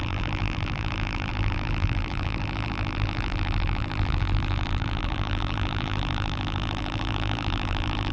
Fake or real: fake